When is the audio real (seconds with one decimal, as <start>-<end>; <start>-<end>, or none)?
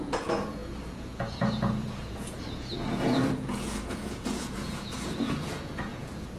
none